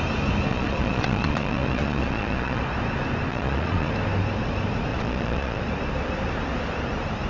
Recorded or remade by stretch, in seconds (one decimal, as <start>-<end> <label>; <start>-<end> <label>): 0.0-0.5 recorded; 0.5-2.6 remade; 2.6-3.3 recorded; 3.3-3.9 remade; 3.9-4.9 recorded; 4.9-5.6 remade; 5.6-7.3 recorded